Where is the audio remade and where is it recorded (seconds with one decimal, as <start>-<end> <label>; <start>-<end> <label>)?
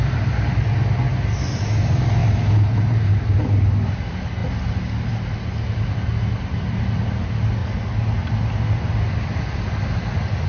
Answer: 0.0-2.2 recorded; 2.2-3.4 remade; 3.4-10.5 recorded